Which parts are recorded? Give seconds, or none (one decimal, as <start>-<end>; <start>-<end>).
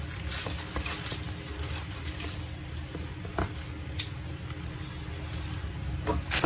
0.0-6.5